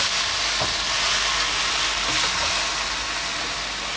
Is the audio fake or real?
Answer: real